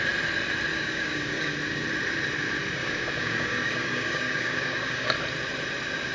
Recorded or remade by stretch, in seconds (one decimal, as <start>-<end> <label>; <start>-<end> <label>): 0.0-0.7 recorded; 0.7-1.5 remade; 1.5-2.8 recorded; 2.8-5.1 remade; 5.1-6.1 recorded